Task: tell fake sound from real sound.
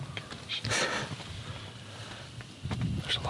real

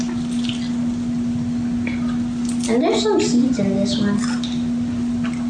real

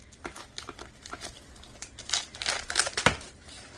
real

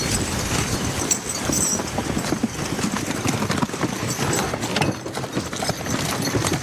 fake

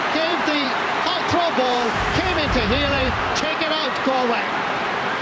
fake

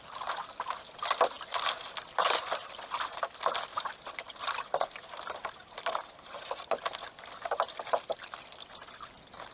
real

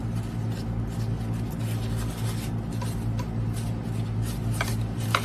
real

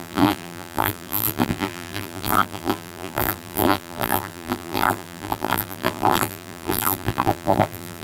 fake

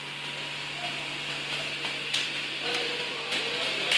real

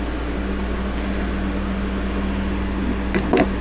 real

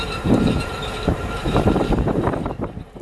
fake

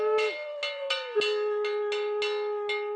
real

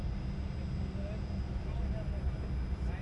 real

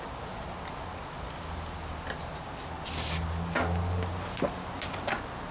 real